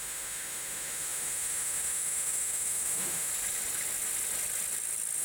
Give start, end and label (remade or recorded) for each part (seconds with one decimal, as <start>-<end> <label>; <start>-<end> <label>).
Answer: 0.0-3.3 remade; 3.3-5.2 recorded